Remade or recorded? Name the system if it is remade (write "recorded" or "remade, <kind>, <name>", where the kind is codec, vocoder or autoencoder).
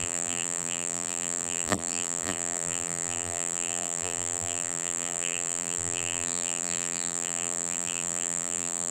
remade, vocoder, BigVGAN v2